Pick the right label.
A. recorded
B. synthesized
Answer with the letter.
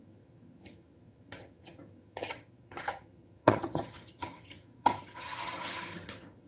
B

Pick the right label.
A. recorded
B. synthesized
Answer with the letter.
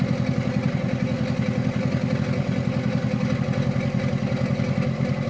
A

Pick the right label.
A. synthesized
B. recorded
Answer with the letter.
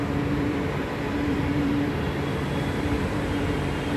A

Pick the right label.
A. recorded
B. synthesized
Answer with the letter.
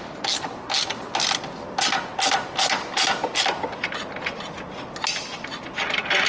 A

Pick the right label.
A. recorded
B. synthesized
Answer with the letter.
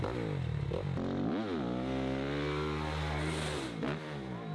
A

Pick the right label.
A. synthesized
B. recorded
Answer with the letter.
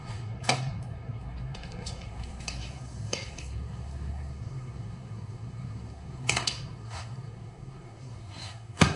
A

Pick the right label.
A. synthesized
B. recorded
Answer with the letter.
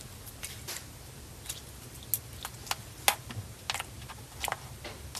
B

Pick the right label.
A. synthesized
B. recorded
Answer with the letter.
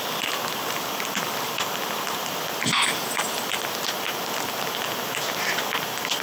B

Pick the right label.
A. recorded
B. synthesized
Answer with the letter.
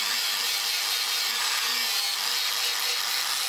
A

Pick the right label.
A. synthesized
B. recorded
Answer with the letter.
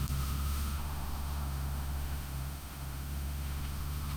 A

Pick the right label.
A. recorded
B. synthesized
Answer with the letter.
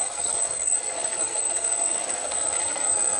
B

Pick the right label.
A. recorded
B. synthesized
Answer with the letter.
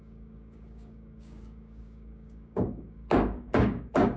B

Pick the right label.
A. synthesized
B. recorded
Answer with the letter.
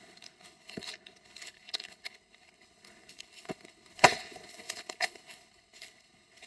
A